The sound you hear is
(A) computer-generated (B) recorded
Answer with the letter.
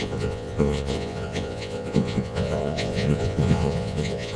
A